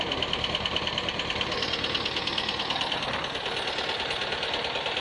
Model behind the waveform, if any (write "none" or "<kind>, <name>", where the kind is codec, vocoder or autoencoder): vocoder, BigVGAN v2